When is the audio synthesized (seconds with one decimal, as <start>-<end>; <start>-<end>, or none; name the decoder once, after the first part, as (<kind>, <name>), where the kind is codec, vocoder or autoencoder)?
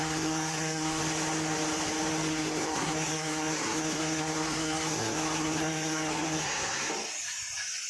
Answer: 0.0-1.0 (codec, SNAC); 2.3-6.9